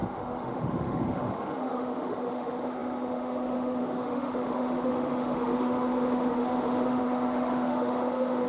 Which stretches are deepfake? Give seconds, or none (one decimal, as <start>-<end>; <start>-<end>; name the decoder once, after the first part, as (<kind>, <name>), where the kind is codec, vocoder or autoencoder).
0.0-8.5 (autoencoder, DAC-VAE)